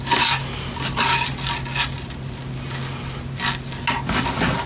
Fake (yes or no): no